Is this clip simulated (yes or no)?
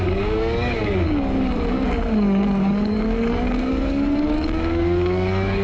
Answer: yes